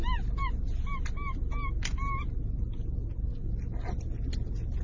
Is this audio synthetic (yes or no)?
no